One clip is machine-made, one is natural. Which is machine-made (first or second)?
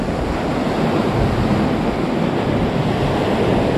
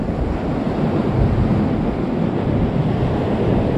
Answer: second